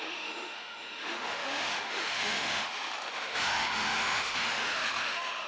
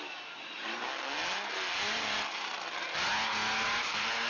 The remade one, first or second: first